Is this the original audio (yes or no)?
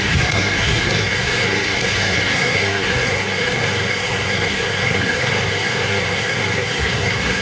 no